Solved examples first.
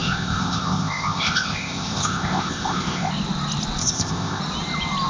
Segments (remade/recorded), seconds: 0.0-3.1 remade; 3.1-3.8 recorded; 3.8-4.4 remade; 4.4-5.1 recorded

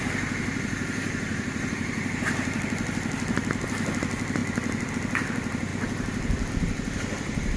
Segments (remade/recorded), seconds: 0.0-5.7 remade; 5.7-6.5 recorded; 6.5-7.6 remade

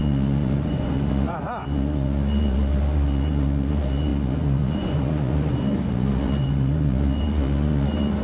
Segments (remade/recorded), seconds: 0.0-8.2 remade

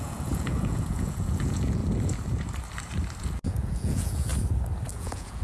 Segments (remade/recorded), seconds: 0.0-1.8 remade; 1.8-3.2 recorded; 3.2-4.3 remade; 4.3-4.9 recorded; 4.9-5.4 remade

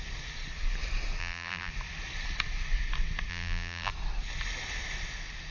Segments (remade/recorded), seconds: 0.0-1.2 recorded; 1.2-1.7 remade; 1.7-3.3 recorded; 3.3-3.9 remade; 3.9-5.5 recorded

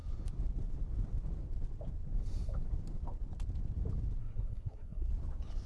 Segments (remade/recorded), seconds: 0.0-4.2 recorded; 4.2-5.1 remade; 5.1-5.7 recorded

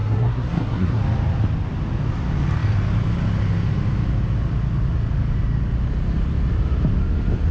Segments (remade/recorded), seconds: 0.0-1.0 remade; 1.0-7.5 recorded